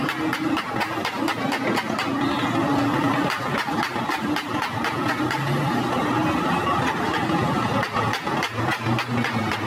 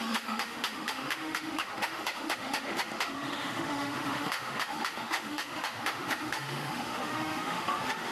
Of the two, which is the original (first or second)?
first